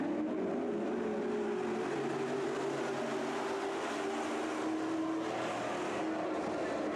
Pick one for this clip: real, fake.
real